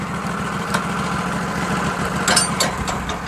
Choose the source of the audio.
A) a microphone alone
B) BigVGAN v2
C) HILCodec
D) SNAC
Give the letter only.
A